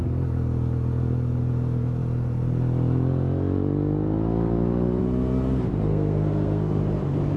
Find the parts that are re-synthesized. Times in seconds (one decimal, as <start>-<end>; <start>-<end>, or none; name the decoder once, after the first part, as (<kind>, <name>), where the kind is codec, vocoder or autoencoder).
5.9-6.8 (codec, SNAC)